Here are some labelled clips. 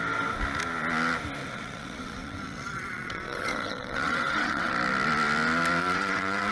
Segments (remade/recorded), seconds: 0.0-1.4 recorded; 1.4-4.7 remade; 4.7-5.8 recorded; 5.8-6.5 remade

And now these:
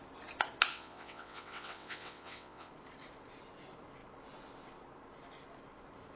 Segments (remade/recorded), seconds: 0.0-0.7 recorded; 0.7-2.7 remade; 2.7-6.2 recorded